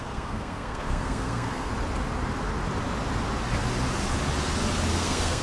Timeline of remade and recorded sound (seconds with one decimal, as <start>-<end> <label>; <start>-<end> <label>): 0.0-1.7 remade; 1.7-4.9 recorded; 4.9-5.4 remade